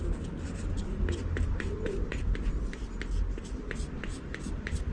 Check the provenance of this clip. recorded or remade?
recorded